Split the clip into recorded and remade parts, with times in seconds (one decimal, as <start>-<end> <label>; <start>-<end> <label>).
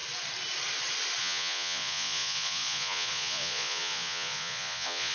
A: 0.0-1.2 recorded; 1.2-5.1 remade